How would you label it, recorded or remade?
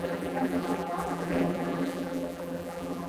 remade